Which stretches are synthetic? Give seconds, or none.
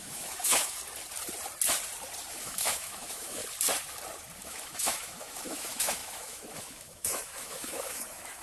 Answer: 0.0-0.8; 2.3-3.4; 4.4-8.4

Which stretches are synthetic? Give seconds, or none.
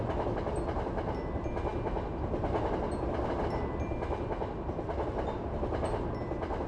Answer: none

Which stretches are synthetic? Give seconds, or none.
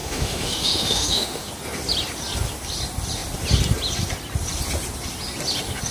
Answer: 0.0-1.5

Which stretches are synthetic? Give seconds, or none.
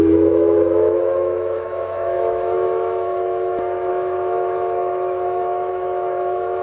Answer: 0.0-6.6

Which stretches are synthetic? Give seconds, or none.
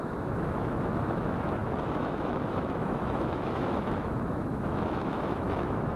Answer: 0.0-6.0